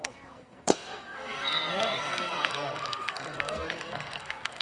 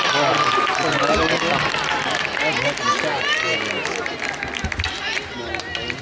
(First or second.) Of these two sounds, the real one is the second